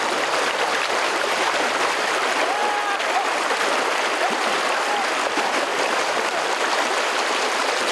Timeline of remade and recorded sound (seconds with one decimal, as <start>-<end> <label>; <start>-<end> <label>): 0.0-2.6 remade; 2.6-3.4 recorded; 3.4-7.9 remade